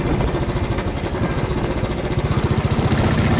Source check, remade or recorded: recorded